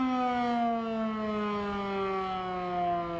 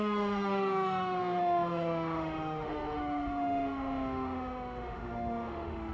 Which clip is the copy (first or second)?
second